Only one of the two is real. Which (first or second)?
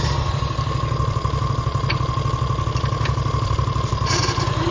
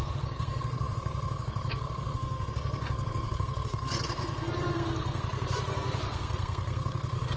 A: first